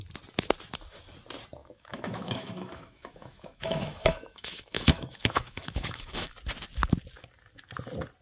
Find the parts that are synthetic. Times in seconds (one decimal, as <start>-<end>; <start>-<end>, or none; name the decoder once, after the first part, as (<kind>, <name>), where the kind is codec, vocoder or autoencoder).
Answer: 1.6-6.3 (autoencoder, DAC-VAE)